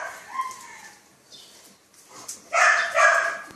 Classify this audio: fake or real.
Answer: real